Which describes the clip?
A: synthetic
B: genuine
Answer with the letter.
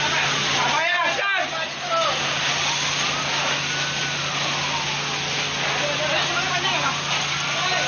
B